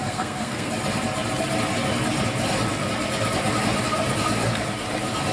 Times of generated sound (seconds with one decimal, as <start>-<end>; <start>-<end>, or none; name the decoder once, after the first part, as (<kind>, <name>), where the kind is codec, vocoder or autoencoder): 0.0-0.7 (codec, SNAC)